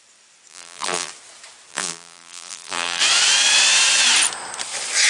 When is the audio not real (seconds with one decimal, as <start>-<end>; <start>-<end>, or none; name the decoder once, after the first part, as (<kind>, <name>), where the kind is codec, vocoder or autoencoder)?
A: 0.5-1.1 (vocoder, BigVGAN v2); 1.7-3.0